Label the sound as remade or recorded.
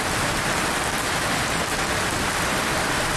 recorded